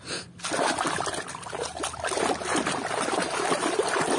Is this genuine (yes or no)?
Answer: yes